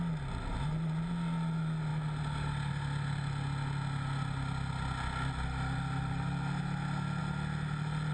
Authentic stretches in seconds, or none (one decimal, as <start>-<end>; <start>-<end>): 0.0-8.1